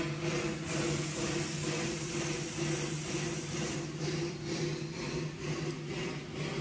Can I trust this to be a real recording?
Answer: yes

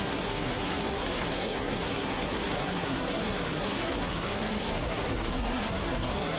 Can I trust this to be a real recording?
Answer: no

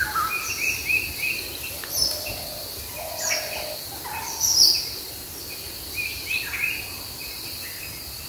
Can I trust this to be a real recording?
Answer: yes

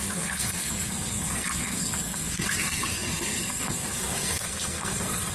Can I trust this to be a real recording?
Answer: no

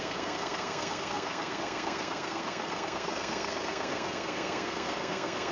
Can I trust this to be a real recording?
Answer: no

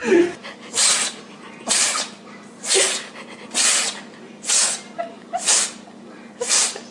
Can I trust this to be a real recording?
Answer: yes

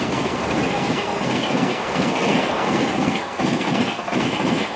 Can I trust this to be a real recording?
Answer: no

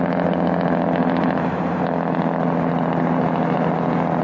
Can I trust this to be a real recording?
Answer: yes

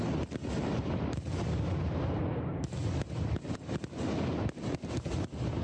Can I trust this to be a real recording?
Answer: yes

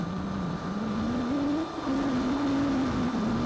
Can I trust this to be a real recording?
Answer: yes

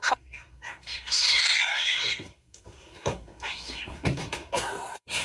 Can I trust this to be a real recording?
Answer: no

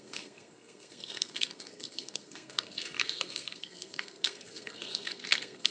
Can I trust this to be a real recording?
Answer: no